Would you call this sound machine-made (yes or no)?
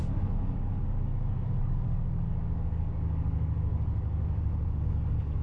yes